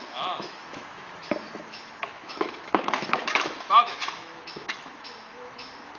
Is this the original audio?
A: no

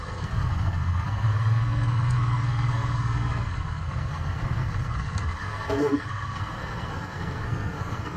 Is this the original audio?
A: no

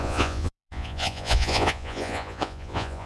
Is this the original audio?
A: no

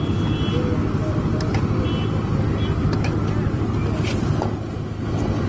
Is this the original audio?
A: yes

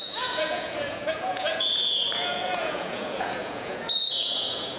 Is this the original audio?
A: no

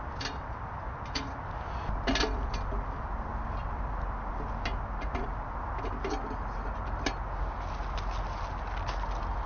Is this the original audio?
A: yes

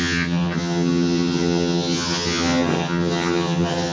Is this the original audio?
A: no